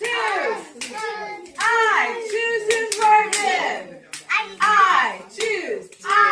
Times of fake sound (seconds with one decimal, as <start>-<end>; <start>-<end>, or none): 3.4-4.3; 5.0-5.7